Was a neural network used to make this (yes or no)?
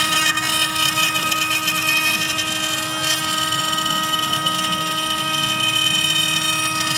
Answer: no